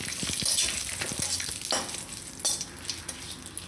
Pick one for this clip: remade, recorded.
recorded